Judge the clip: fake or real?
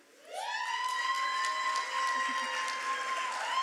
real